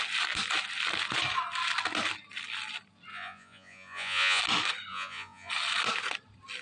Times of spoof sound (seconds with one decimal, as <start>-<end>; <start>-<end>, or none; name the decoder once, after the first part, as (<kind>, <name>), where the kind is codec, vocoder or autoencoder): 3.1-4.4 (vocoder, Vocos); 4.9-5.5